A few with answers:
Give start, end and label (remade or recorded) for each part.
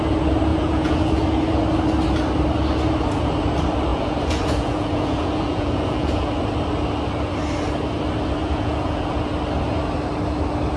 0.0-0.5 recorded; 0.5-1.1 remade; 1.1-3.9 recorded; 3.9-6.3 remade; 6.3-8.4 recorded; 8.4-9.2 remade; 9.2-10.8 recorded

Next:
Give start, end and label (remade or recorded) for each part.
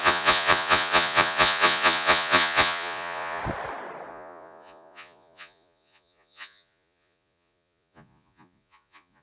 0.0-3.4 remade; 3.4-4.1 recorded; 4.1-9.2 remade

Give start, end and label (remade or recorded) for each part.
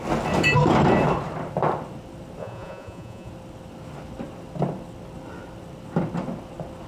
0.0-2.4 recorded; 2.4-3.3 remade; 3.3-6.9 recorded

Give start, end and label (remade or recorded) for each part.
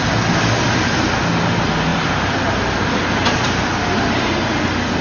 0.0-5.0 recorded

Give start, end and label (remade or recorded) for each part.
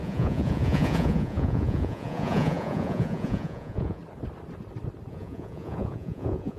0.0-4.0 remade; 4.0-5.1 recorded; 5.1-6.6 remade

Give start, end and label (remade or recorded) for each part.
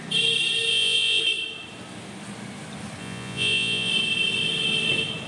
0.0-0.7 recorded; 0.7-1.2 remade; 1.2-3.0 recorded; 3.0-3.9 remade; 3.9-5.3 recorded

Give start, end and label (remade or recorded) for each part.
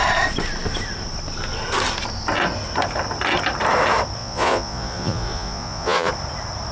0.0-4.2 recorded; 4.2-6.1 remade; 6.1-6.7 recorded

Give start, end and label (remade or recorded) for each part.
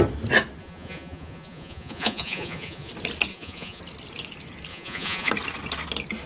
0.0-0.6 recorded; 0.6-2.9 remade; 2.9-3.3 recorded; 3.3-3.8 remade; 3.8-4.7 recorded; 4.7-5.3 remade; 5.3-6.3 recorded